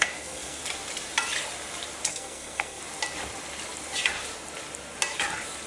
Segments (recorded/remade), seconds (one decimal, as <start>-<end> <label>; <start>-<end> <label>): 0.0-0.6 remade; 0.6-2.1 recorded; 2.1-2.8 remade; 2.8-5.7 recorded